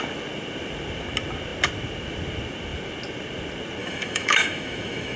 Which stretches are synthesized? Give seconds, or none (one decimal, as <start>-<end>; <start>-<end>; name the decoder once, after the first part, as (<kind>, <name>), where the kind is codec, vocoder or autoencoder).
3.8-5.2 (autoencoder, DAC-VAE)